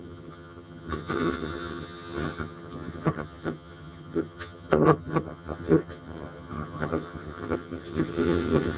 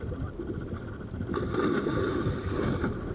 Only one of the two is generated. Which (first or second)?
first